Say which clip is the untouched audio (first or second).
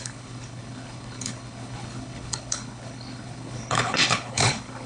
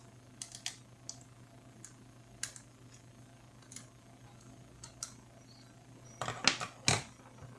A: second